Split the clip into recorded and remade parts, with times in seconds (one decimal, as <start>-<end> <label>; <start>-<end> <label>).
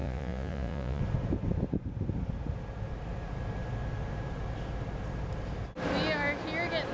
0.0-1.0 remade; 1.0-6.9 recorded